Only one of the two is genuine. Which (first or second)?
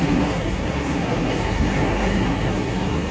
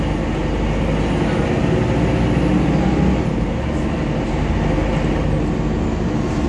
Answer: second